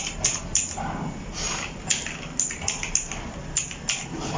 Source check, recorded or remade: recorded